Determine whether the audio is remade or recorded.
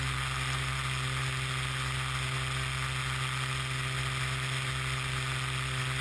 recorded